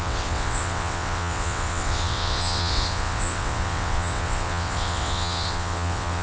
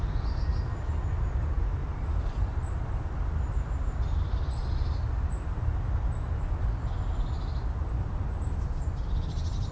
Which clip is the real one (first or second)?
second